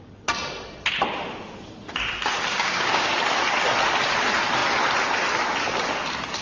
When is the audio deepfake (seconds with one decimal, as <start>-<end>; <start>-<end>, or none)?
2.5-3.1